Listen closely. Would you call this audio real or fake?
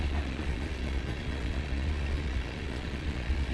fake